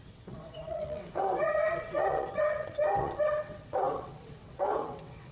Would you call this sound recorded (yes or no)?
no